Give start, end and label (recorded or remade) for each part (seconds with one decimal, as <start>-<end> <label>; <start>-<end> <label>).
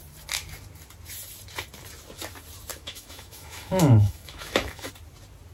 0.0-2.7 recorded; 2.7-4.9 remade; 4.9-5.5 recorded